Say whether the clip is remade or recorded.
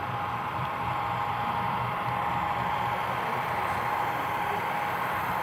remade